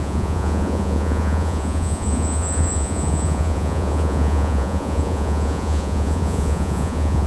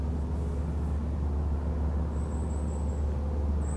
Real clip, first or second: second